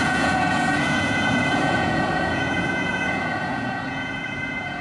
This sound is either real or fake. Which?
fake